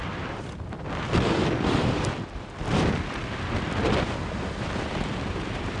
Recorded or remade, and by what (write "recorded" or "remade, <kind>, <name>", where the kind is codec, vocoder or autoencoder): remade, vocoder, BigVGAN v2